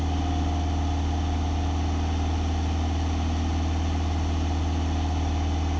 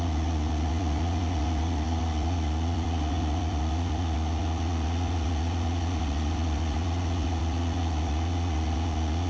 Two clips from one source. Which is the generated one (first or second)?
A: second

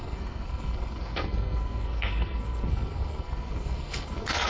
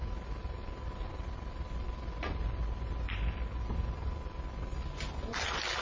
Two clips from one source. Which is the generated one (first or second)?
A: first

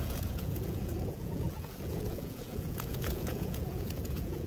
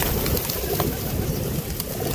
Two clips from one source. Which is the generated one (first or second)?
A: first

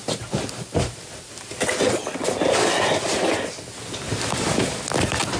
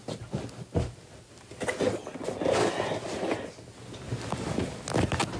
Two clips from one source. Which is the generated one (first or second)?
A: first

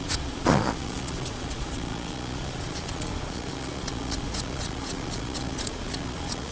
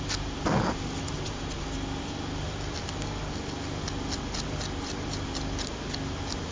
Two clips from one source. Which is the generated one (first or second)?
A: first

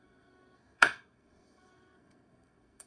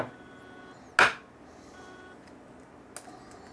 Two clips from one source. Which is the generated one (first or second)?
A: first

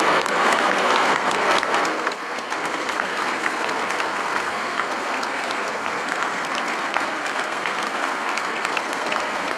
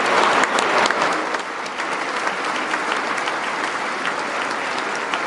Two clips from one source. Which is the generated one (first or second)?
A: first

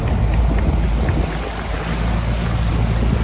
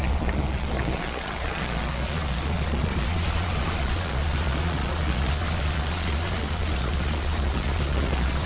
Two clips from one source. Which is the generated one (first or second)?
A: second